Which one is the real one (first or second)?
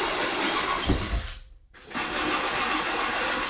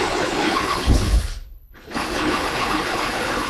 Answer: first